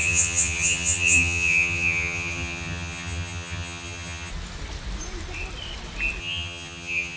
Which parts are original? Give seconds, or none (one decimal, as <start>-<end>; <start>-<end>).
4.3-6.2

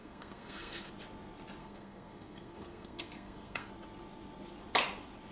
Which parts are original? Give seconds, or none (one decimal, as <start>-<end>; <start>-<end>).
0.9-1.6; 3.7-5.3

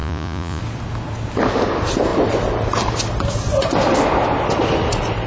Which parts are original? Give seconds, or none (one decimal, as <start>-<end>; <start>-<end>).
0.6-5.3

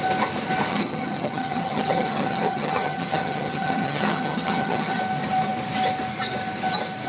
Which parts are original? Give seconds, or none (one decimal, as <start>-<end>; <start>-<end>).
0.0-0.7; 5.0-7.1

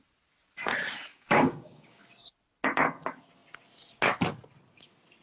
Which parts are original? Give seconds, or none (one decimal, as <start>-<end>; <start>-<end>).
0.0-1.1; 2.0-5.2

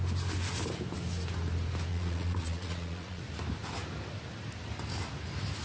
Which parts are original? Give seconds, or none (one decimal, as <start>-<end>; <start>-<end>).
0.0-1.9; 3.2-5.6

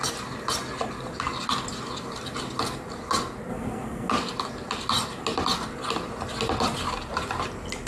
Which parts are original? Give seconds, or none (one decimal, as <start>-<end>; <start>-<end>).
0.0-3.5; 4.1-7.9

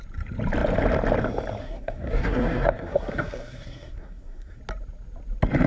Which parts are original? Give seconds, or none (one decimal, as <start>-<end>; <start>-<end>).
0.0-1.6; 4.6-5.7